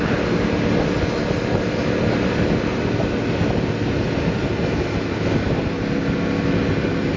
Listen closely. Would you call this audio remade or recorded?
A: recorded